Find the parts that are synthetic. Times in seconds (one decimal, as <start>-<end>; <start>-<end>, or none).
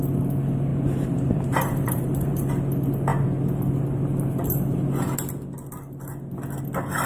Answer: 0.7-2.5